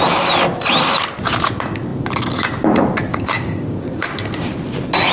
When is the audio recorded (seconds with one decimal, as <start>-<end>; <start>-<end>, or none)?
0.0-3.1; 4.1-5.1